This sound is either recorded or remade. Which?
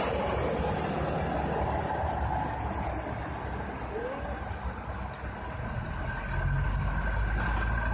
recorded